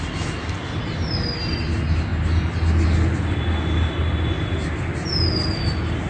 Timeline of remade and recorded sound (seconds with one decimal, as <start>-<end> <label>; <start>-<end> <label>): 0.0-6.1 recorded